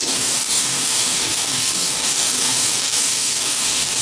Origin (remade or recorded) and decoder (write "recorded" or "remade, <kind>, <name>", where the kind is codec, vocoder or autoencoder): remade, codec, DAC